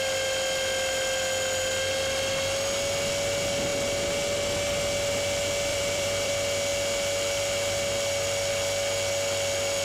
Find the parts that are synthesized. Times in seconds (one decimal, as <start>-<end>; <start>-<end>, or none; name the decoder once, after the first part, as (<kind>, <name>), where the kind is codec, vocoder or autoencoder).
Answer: 5.7-6.3 (vocoder, BigVGAN v2)